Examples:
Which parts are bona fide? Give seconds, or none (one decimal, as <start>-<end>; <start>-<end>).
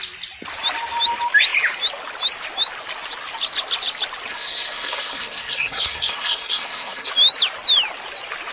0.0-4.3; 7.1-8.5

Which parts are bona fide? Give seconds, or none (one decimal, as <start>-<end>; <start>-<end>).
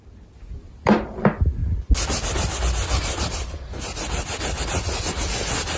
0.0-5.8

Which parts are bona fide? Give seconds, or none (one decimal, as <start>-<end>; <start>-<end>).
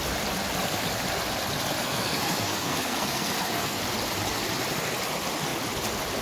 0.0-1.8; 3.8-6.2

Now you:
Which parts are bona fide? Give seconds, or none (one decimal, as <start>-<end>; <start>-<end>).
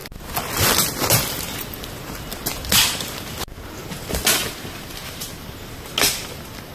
0.0-6.7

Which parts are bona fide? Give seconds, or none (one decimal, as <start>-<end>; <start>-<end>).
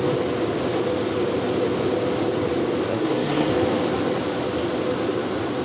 0.0-2.9; 3.5-5.6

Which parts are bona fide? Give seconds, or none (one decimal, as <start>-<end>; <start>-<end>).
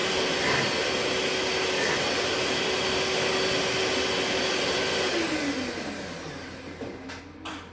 0.0-7.7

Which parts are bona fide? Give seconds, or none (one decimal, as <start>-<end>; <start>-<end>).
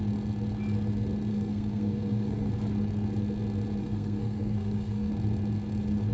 0.0-1.3; 2.5-3.8; 5.1-6.1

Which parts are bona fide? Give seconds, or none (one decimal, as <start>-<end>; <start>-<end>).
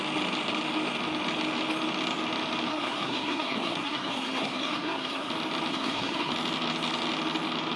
0.0-2.7; 5.3-5.7; 6.3-7.8